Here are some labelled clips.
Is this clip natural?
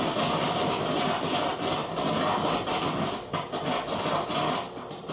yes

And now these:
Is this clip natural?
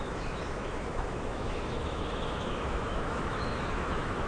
no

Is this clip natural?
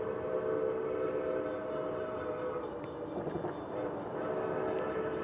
yes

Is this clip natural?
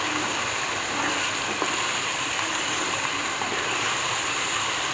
no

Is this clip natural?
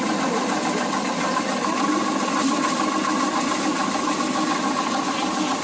yes